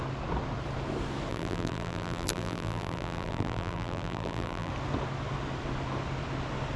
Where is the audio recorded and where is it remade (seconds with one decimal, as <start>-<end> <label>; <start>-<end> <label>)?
0.0-1.3 recorded; 1.3-4.7 remade; 4.7-6.8 recorded